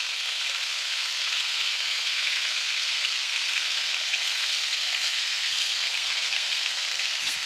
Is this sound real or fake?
fake